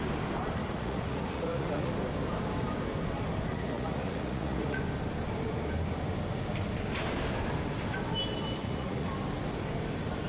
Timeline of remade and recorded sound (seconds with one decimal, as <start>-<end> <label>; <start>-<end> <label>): 0.0-0.6 recorded; 0.6-1.9 remade; 1.9-3.5 recorded; 3.5-4.8 remade; 4.8-8.6 recorded; 8.6-9.1 remade; 9.1-10.3 recorded